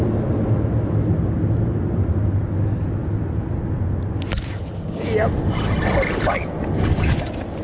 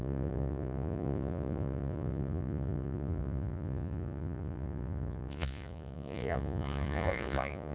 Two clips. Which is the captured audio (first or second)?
first